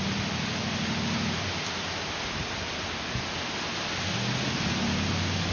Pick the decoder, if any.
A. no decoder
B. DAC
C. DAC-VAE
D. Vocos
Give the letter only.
A